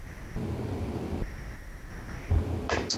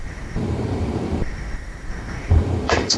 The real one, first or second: first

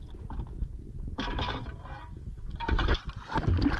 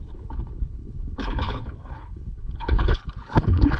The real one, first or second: first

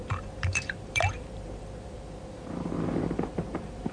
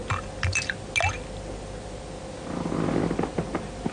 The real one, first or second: second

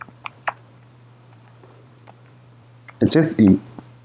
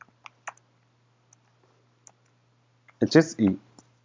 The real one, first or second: second